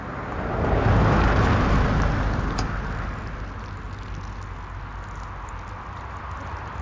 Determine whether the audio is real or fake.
real